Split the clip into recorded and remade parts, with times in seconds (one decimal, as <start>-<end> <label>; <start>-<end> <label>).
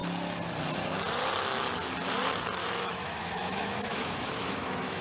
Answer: 0.0-2.6 recorded; 2.6-5.0 remade